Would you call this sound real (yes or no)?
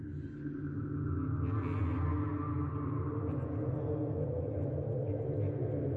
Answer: yes